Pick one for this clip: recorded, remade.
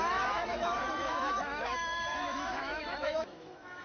remade